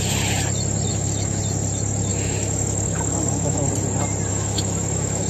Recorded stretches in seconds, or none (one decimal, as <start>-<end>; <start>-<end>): 0.0-0.9; 1.4-2.1; 3.7-4.3